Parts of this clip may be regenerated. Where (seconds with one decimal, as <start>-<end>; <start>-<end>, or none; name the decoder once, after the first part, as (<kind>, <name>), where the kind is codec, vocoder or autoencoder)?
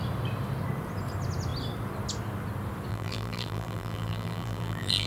2.9-5.1 (vocoder, BigVGAN v2)